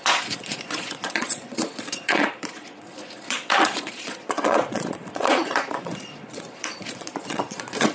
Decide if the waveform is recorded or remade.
remade